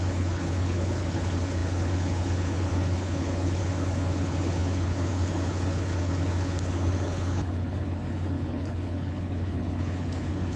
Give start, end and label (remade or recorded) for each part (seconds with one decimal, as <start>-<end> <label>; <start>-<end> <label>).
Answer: 0.0-10.6 remade